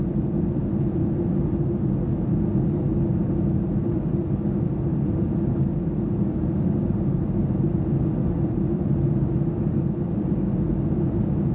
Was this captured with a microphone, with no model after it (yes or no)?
yes